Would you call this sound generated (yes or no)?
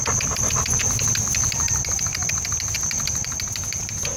no